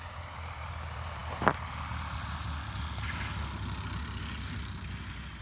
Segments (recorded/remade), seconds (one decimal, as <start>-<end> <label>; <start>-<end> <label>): 0.0-5.4 recorded